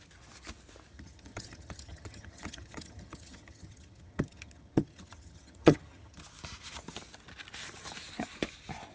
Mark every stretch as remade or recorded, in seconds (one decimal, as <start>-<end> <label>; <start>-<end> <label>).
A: 0.0-0.9 recorded; 0.9-6.2 remade; 6.2-8.9 recorded